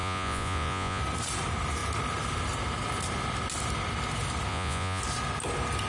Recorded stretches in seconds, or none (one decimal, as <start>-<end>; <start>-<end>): 1.0-4.5; 5.0-5.9